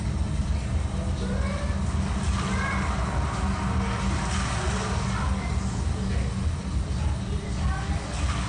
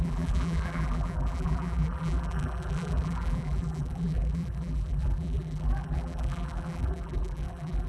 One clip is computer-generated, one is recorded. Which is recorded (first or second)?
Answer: first